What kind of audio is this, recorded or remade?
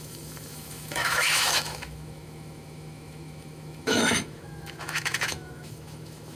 remade